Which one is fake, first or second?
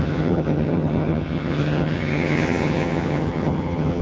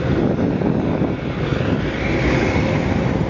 first